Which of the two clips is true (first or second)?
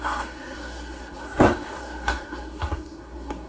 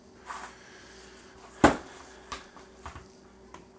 second